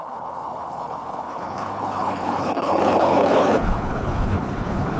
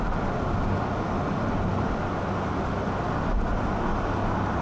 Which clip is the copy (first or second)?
first